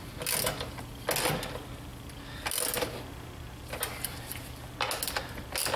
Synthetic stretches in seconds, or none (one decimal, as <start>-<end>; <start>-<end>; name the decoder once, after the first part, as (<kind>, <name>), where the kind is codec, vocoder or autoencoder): none